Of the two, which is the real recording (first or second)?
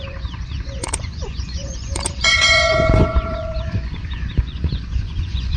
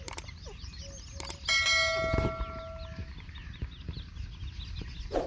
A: second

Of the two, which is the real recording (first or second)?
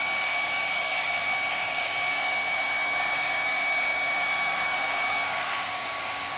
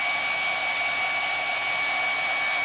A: second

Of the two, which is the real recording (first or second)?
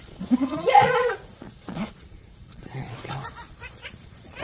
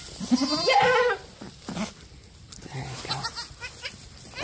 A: second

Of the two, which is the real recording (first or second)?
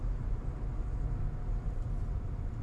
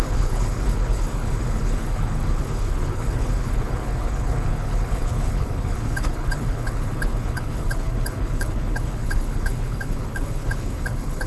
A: first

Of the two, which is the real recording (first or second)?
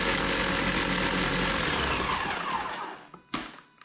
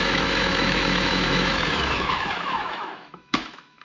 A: first